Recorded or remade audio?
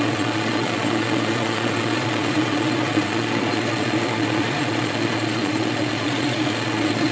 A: remade